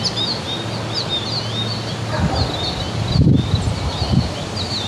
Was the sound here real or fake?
real